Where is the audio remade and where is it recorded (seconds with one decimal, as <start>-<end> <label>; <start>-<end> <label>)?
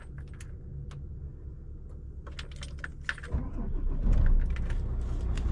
0.0-5.5 recorded